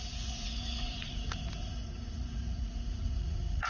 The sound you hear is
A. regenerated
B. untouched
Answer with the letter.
A